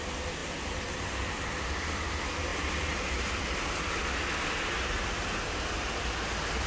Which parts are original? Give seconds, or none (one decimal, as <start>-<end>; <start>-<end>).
0.0-6.7